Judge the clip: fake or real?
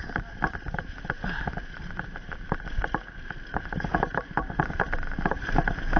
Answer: real